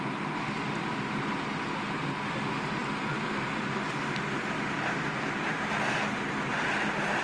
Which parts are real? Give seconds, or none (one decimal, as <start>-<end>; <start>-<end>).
0.0-7.2